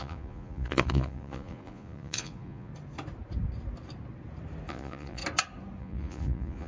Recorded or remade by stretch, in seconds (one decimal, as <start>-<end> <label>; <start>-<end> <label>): 0.0-2.7 remade; 2.7-4.7 recorded; 4.7-5.2 remade; 5.2-5.8 recorded; 5.8-6.7 remade